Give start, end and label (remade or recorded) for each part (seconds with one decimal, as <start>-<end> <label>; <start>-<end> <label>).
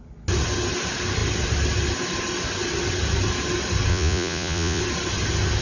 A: 0.0-3.9 recorded; 3.9-4.8 remade; 4.8-5.6 recorded